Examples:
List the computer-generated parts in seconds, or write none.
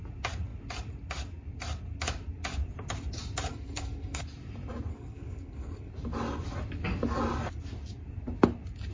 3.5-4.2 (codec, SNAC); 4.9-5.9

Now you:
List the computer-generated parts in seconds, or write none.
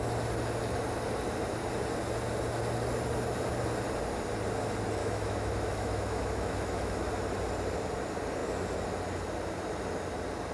5.0-7.1 (autoencoder, DAC-VAE)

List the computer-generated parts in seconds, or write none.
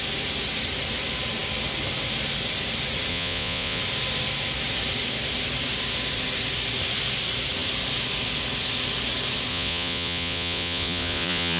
3.1-3.8 (vocoder, Vocos); 9.5-11.6